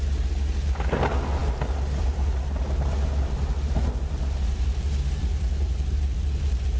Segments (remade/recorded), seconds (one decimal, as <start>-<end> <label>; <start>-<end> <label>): 0.0-6.8 recorded